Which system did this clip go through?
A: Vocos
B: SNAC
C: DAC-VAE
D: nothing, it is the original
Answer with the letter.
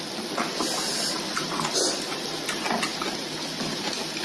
D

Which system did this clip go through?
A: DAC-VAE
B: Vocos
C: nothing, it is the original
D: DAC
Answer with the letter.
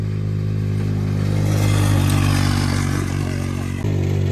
C